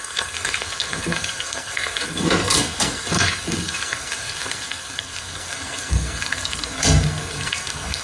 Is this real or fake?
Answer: fake